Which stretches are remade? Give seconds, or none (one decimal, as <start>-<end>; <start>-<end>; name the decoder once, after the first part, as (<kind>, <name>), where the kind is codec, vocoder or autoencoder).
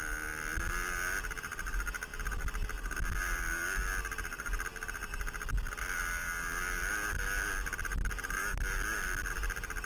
none